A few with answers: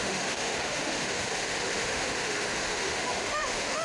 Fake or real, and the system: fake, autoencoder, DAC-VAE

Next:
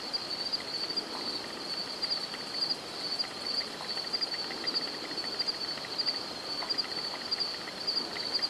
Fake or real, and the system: real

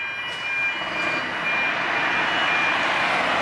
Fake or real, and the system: real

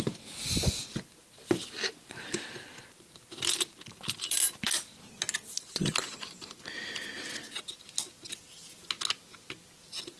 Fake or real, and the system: real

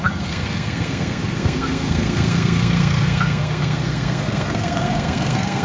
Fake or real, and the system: fake, codec, SNAC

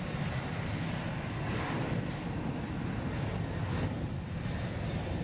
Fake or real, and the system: real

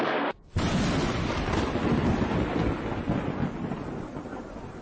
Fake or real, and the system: real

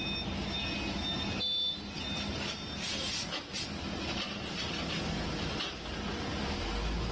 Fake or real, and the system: real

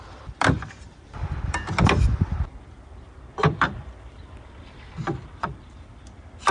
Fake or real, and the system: fake, vocoder, BigVGAN v2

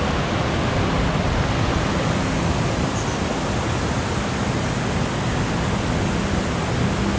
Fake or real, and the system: real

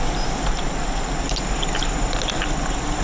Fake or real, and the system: real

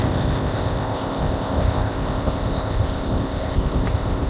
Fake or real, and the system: fake, codec, ZipCodec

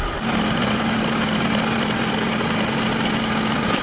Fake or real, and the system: real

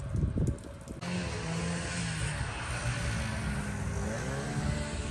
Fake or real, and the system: real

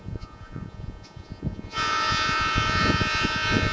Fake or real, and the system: fake, vocoder, Vocos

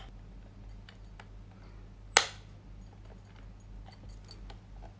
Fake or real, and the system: real